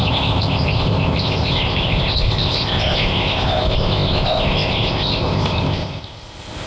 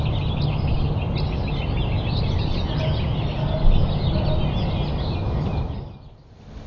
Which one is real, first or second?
second